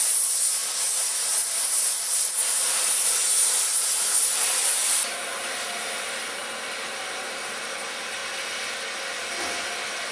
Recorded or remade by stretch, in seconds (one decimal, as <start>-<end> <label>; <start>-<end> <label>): 0.0-6.4 remade; 6.4-6.9 recorded; 6.9-8.2 remade; 8.2-10.1 recorded